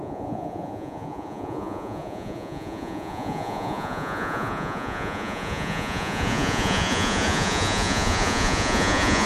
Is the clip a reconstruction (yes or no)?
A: yes